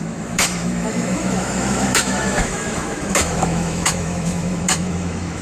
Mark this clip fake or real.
fake